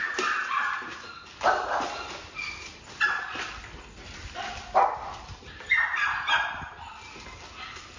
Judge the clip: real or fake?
real